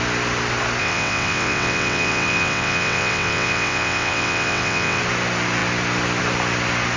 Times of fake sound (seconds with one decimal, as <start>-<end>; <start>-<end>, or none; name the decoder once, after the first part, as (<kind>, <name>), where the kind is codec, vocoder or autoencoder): 0.8-5.0 (vocoder, WaveNeXt)